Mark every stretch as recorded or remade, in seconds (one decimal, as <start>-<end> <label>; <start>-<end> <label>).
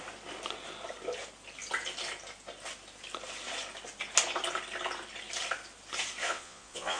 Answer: 0.0-6.2 recorded; 6.2-7.0 remade